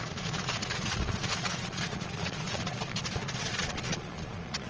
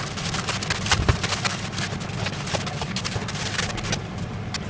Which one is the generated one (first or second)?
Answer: first